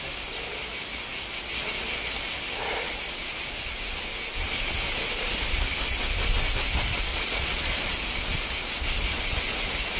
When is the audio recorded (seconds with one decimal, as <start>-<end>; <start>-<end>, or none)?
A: 0.0-7.1; 7.7-10.0